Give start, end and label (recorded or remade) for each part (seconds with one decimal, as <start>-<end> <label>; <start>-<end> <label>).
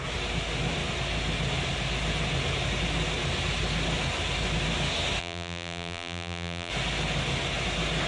0.0-5.2 recorded; 5.2-6.7 remade; 6.7-8.1 recorded